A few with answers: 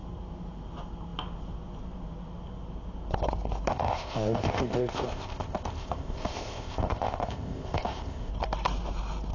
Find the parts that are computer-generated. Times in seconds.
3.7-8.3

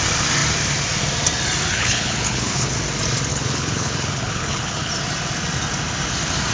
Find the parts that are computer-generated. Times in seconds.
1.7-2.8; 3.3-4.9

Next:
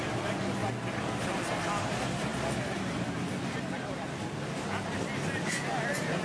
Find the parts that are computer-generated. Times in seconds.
none